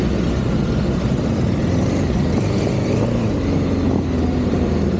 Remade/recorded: remade